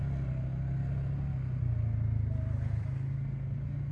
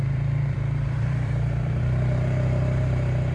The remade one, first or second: second